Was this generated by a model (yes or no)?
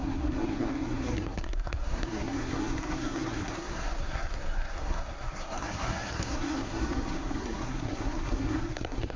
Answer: yes